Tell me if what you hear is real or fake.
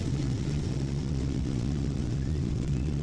fake